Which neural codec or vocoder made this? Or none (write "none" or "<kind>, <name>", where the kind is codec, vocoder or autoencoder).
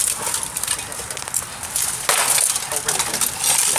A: none